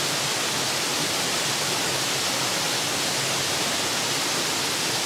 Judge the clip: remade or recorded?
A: recorded